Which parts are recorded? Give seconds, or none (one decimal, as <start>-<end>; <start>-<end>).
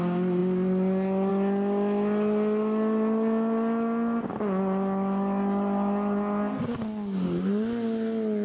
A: 0.0-8.4